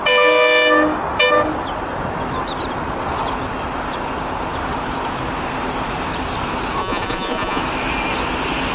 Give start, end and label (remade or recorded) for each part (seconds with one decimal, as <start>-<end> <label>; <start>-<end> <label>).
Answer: 0.0-6.8 recorded; 6.8-7.6 remade; 7.6-8.7 recorded